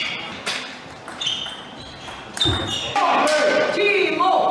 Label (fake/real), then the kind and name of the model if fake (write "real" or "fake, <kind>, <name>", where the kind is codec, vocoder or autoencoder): fake, vocoder, BigVGAN v2